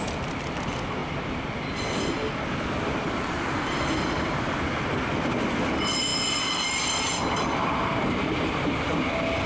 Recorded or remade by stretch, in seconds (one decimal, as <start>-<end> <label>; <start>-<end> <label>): 0.0-9.5 recorded

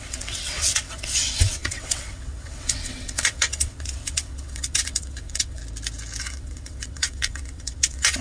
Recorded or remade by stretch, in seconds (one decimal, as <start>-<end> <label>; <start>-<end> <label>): 0.0-5.6 remade; 5.6-6.2 recorded; 6.2-8.2 remade

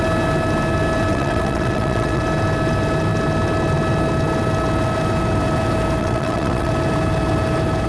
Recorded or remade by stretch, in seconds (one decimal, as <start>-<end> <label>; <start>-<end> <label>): 0.0-1.1 recorded; 1.1-2.2 remade; 2.2-6.0 recorded; 6.0-6.7 remade; 6.7-7.9 recorded